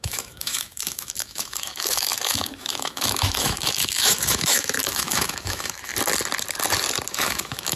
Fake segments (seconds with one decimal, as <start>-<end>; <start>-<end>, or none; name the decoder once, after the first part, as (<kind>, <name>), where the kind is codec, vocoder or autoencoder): 0.0-5.9 (autoencoder, DAC-VAE); 7.1-7.8